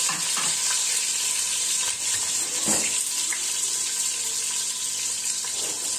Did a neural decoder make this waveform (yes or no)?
no